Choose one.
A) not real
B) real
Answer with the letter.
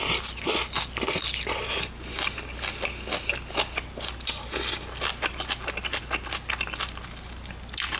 B